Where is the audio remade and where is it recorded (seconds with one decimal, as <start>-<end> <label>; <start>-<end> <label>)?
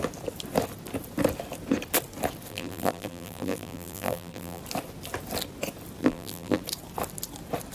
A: 0.0-2.5 recorded; 2.5-4.6 remade; 4.6-6.0 recorded; 6.0-6.6 remade; 6.6-7.7 recorded